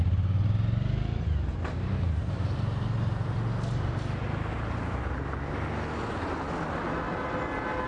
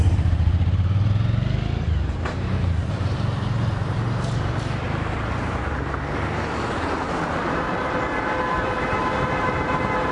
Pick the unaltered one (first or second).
first